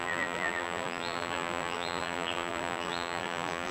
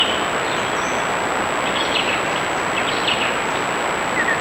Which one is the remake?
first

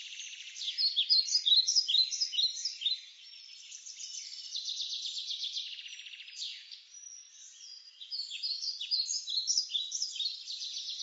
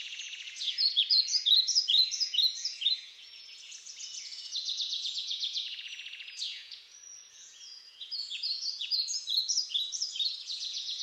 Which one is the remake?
second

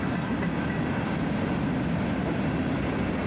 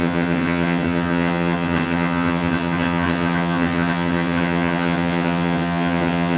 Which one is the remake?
second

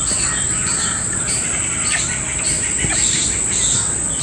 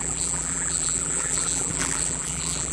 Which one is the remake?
second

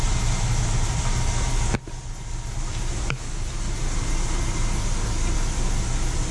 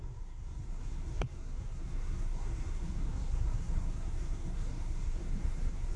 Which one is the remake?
second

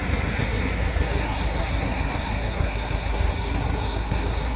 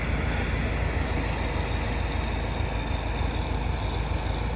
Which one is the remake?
first